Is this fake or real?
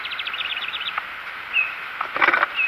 real